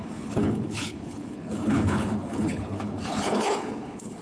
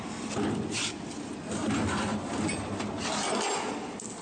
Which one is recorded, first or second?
second